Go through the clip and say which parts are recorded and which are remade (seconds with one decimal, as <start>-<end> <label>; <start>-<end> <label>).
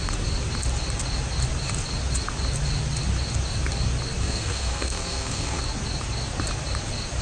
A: 0.0-4.2 recorded; 4.2-5.6 remade; 5.6-7.2 recorded